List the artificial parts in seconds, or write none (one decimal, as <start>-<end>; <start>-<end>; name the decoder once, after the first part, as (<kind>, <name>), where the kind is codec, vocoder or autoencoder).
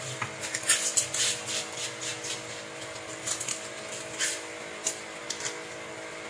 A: none